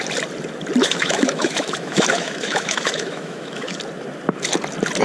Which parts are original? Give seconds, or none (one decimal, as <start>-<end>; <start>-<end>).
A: 0.0-0.8; 3.8-5.0

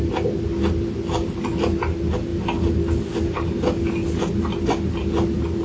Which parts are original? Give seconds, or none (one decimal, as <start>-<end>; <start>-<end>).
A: 0.0-5.6

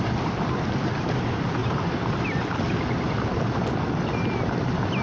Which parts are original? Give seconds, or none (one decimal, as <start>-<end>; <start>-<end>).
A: 0.0-5.0

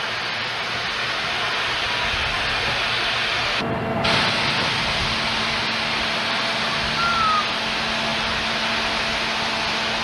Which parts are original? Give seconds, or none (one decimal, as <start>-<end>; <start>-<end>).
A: 0.0-10.0

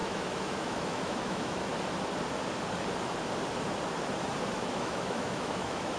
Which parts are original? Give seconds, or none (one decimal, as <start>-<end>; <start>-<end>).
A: 1.7-4.5

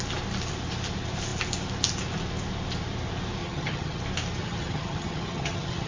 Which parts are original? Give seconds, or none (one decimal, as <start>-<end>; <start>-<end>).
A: 0.0-3.4; 4.0-4.4

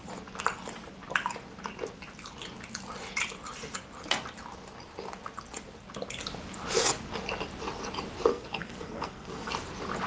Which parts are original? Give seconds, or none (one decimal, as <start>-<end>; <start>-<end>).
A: 0.0-8.3; 9.5-10.1